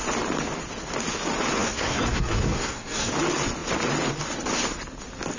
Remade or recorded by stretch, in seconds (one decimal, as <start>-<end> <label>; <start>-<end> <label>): 0.0-1.6 recorded; 1.6-3.1 remade; 3.1-5.4 recorded

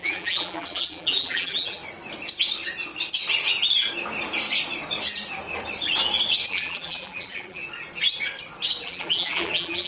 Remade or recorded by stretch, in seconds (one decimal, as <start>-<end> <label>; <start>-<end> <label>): 0.0-1.8 remade; 1.8-6.5 recorded; 6.5-7.6 remade; 7.6-8.8 recorded; 8.8-9.9 remade

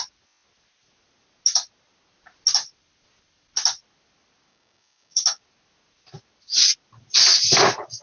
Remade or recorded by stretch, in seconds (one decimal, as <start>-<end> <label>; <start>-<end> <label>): 0.0-4.5 recorded; 4.5-5.4 remade; 5.4-8.0 recorded

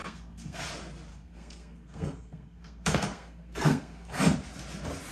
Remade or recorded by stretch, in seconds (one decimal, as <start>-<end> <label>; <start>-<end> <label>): 0.0-0.6 remade; 0.6-1.1 recorded; 1.1-4.2 remade; 4.2-5.1 recorded

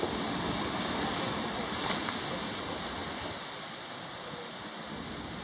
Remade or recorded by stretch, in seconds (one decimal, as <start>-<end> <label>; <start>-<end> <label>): 0.0-3.0 recorded; 3.0-4.1 remade; 4.1-5.4 recorded